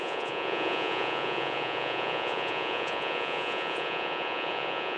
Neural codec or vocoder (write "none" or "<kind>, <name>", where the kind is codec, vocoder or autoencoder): vocoder, Vocos